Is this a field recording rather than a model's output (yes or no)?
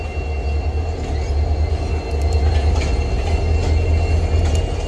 yes